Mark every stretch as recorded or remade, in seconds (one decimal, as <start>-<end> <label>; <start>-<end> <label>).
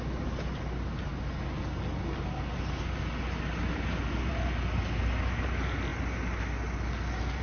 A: 0.0-7.4 recorded